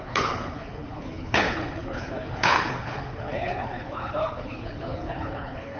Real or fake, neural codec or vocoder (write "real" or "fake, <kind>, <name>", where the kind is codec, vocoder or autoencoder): fake, codec, HILCodec